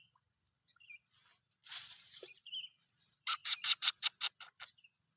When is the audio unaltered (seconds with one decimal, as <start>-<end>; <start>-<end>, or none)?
0.0-1.6; 2.5-5.2